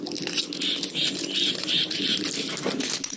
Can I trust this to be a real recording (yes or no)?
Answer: yes